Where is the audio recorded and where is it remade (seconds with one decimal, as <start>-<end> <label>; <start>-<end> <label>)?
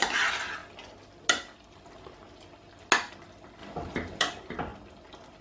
0.0-5.4 recorded